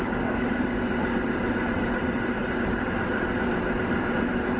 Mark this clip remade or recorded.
recorded